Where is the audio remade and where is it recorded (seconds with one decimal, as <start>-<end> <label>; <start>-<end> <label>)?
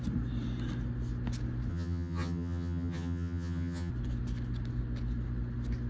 0.0-1.7 recorded; 1.7-3.9 remade; 3.9-5.9 recorded